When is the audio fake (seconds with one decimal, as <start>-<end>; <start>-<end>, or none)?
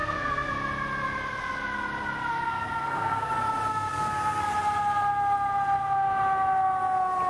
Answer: 0.0-0.5; 2.3-3.3; 3.7-4.5